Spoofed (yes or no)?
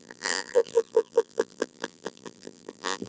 yes